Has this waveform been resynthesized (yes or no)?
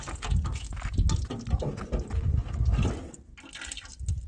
no